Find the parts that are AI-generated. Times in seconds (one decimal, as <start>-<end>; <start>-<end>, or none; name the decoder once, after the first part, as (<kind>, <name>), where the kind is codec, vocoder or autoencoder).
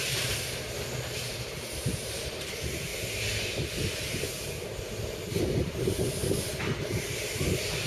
0.0-2.9 (vocoder, BigVGAN v2); 5.4-6.2; 6.8-7.9